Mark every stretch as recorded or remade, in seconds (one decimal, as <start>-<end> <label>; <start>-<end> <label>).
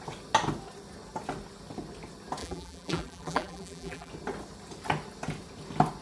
0.0-2.4 recorded; 2.4-4.1 remade; 4.1-6.0 recorded